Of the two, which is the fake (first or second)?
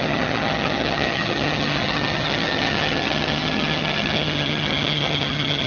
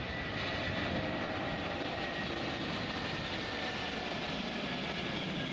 first